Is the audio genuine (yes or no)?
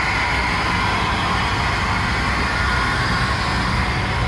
yes